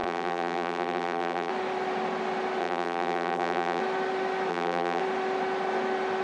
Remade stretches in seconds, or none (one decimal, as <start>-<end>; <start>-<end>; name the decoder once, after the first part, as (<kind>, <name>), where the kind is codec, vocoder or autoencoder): 0.0-1.5 (vocoder, BigVGAN v2); 2.6-3.8; 4.5-5.0